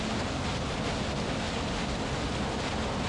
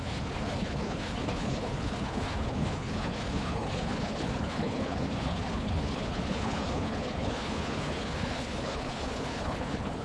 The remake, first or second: second